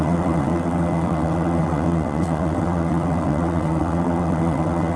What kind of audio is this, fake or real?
fake